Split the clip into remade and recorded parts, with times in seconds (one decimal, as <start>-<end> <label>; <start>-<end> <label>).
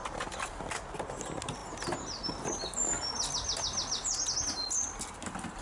0.0-0.5 remade; 0.5-5.6 recorded